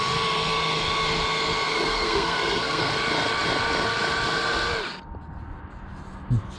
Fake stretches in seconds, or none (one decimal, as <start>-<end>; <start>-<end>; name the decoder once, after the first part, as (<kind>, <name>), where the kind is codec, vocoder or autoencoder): 1.7-2.9 (codec, SNAC)